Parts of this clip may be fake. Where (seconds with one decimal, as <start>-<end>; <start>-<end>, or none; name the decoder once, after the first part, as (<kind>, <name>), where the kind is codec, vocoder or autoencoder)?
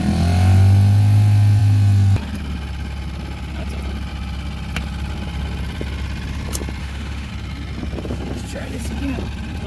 6.8-7.3 (autoencoder, DAC-VAE)